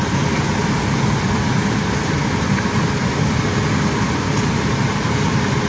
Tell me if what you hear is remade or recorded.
recorded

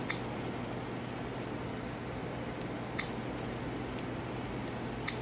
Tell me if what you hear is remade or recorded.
recorded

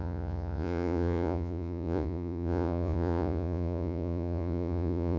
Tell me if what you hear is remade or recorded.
remade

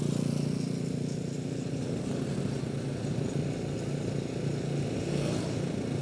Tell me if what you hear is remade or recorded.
recorded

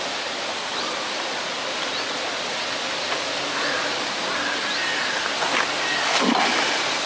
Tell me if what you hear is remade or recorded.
recorded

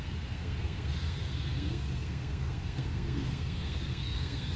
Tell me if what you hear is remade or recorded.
remade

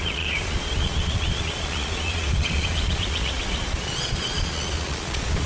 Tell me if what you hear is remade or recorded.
remade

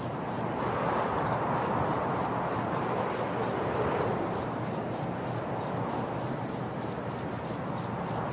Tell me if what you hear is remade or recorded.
recorded